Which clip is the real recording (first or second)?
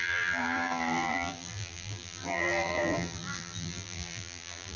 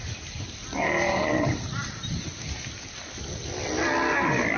second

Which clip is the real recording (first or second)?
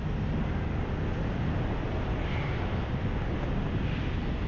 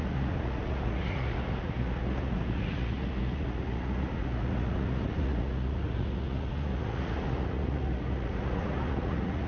first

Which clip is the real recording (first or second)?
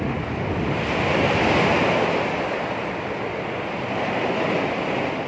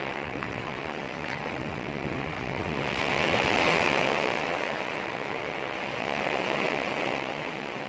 first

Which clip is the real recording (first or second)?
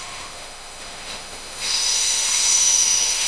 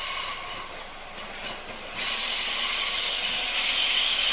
second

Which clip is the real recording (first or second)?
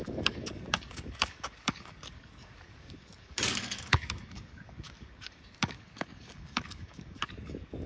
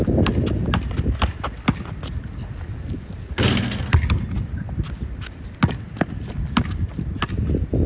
second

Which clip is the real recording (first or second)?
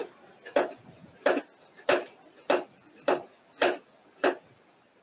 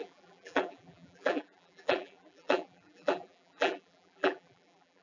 first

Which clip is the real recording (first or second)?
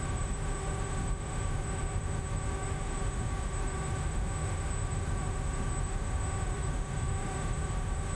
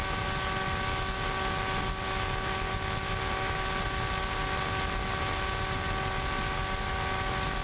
second